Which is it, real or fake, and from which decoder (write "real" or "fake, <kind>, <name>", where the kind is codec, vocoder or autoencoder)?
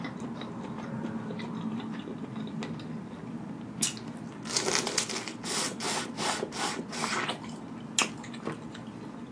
real